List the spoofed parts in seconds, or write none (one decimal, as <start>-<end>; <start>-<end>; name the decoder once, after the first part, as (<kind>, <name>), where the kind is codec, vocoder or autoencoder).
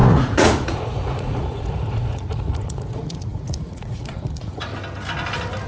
0.0-4.7 (vocoder, Vocos)